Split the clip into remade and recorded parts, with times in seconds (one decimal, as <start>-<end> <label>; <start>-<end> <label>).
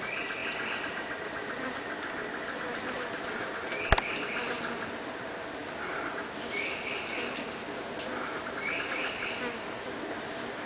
0.0-10.7 recorded